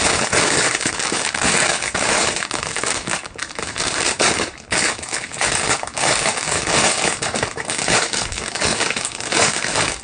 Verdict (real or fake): fake